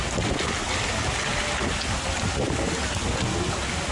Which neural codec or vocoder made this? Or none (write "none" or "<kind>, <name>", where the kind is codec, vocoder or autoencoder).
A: none